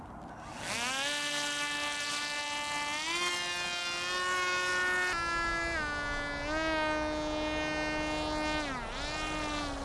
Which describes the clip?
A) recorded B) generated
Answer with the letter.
A